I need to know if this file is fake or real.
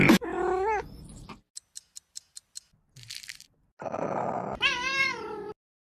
real